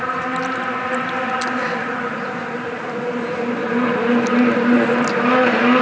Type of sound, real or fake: real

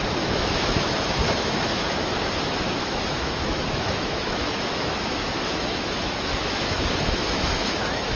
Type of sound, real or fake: fake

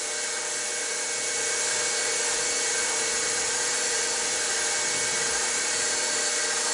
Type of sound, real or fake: real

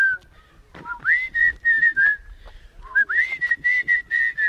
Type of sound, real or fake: real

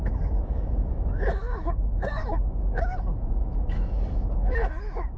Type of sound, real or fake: fake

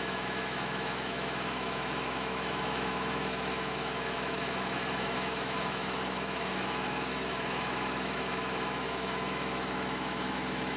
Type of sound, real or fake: fake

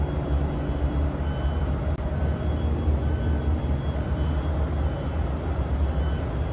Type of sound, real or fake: real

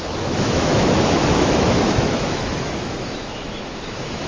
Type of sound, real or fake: fake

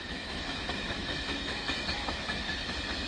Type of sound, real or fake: fake